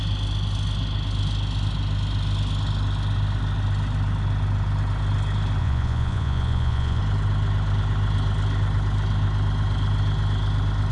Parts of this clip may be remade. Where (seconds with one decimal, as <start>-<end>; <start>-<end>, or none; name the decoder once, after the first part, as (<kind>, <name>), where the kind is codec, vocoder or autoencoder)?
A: 5.6-7.0 (vocoder, Vocos)